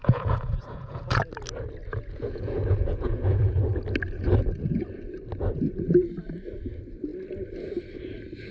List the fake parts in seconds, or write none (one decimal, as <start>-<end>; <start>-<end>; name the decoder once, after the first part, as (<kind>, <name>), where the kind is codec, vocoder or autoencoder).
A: 0.0-1.2 (vocoder, Vocos); 1.9-3.6